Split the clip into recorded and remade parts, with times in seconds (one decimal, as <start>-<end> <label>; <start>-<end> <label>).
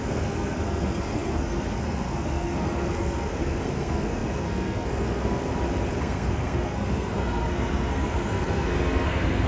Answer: 0.0-5.5 remade; 5.5-6.0 recorded; 6.0-9.5 remade